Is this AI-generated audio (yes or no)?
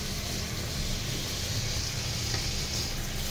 no